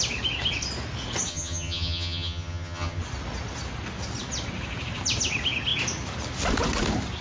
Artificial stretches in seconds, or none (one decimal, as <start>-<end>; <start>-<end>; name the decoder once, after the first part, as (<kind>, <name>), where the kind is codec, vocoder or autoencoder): 1.3-3.0 (vocoder, HiFi-GAN)

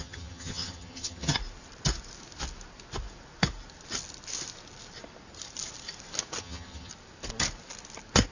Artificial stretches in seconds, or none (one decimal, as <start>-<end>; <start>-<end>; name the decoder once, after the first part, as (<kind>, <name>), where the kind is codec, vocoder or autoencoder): 0.0-1.4 (vocoder, HiFi-GAN); 6.4-6.9

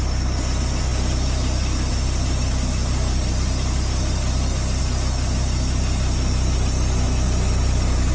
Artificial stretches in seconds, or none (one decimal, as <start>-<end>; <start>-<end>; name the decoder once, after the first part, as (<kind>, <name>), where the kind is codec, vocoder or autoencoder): none